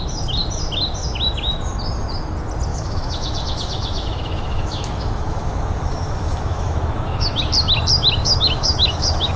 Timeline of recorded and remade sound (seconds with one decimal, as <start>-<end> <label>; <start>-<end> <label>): 0.0-2.7 recorded; 2.7-7.4 remade; 7.4-8.2 recorded; 8.2-9.4 remade